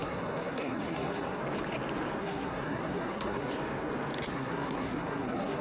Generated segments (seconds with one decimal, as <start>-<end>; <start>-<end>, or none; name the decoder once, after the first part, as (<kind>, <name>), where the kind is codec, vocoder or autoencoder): 0.0-1.4 (codec, SNAC); 2.2-3.5; 4.3-5.6